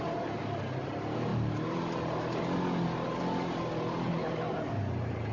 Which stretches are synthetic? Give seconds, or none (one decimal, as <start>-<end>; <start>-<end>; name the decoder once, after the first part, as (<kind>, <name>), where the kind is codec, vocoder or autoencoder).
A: none